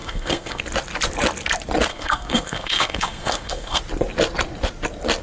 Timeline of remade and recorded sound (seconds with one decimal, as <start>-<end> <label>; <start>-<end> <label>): 0.0-0.6 remade; 0.6-1.9 recorded; 1.9-3.8 remade; 3.8-5.2 recorded